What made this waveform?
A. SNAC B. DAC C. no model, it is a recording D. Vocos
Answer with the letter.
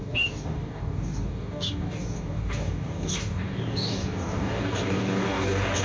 B